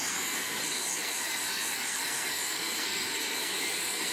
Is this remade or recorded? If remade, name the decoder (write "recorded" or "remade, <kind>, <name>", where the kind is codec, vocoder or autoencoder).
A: remade, codec, SNAC